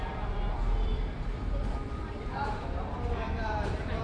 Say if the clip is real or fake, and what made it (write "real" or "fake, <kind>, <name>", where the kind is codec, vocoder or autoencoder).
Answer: fake, vocoder, BigVGAN v2